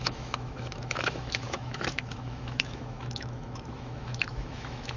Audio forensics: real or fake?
fake